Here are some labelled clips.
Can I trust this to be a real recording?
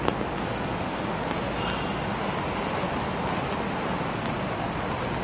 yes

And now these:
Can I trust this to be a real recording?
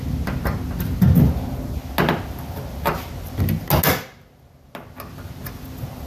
yes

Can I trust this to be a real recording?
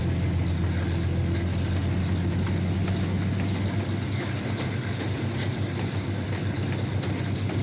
yes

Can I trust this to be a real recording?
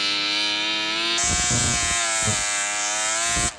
yes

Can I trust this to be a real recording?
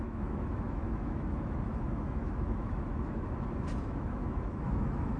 no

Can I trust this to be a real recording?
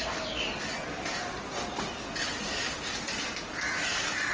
yes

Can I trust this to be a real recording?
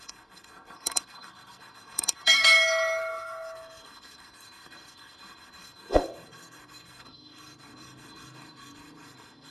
no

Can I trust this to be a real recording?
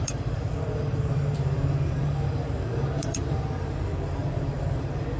no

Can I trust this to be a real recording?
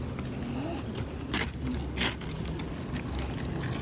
yes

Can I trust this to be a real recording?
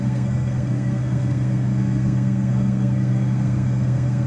no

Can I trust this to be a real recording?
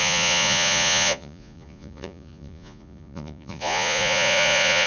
no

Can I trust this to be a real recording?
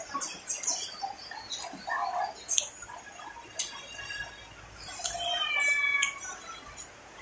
yes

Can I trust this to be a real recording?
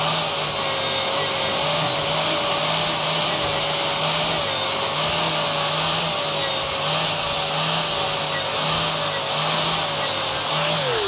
yes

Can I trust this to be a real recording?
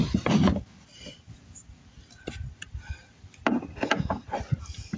yes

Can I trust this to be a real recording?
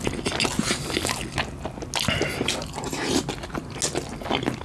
yes